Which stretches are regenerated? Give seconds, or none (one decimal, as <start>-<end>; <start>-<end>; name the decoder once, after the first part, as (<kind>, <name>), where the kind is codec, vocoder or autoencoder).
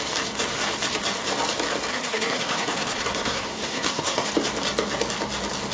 1.9-4.3 (codec, SNAC)